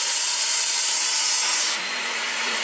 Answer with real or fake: fake